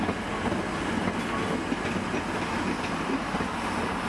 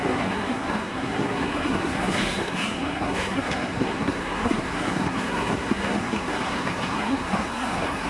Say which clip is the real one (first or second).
first